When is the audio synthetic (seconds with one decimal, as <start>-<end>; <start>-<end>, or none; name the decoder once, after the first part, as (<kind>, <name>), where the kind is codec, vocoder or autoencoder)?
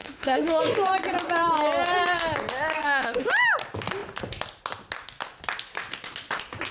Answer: 0.0-0.6 (autoencoder, DAC-VAE); 2.7-3.3